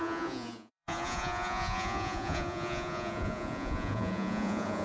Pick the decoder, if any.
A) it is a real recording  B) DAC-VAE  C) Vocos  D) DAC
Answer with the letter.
C